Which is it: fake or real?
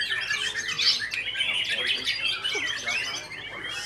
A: real